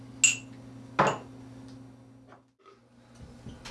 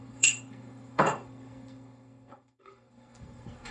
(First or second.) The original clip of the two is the first